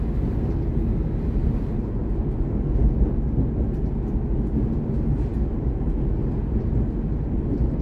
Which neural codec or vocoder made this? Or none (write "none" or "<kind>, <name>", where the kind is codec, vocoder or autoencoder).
none